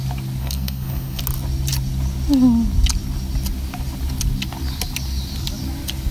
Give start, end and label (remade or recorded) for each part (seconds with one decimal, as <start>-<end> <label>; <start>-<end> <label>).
0.0-0.4 recorded; 0.4-1.2 remade; 1.2-6.1 recorded